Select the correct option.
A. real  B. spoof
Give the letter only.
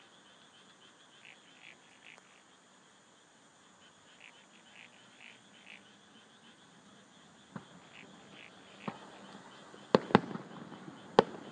A